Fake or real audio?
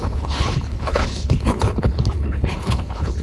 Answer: fake